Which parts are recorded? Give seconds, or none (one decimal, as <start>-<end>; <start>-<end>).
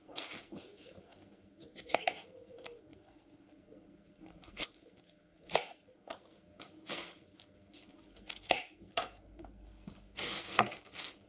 none